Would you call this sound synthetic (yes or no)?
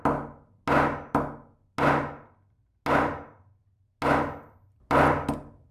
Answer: no